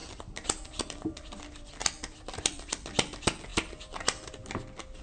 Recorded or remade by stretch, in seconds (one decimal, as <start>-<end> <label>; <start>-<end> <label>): 0.0-1.2 remade; 1.2-1.8 recorded; 1.8-2.7 remade; 2.7-3.5 recorded; 3.5-4.3 remade; 4.3-5.0 recorded